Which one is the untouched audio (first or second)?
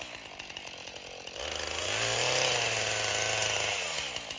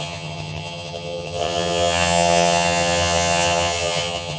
first